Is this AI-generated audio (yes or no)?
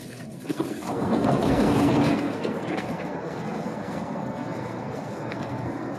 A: yes